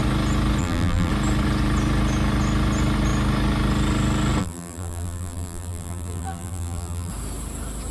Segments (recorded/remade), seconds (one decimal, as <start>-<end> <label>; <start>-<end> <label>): 0.0-0.6 recorded; 0.6-1.1 remade; 1.1-4.4 recorded; 4.4-7.1 remade; 7.1-7.9 recorded